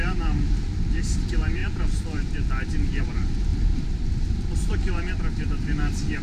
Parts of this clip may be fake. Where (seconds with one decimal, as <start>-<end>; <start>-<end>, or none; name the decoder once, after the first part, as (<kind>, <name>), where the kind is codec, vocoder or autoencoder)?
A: 0.0-6.2 (vocoder, BigVGAN v2)